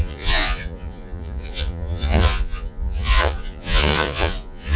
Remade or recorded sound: remade